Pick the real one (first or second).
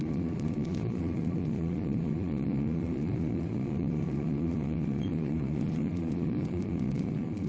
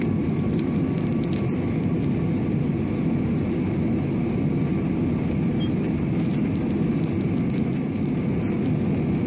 second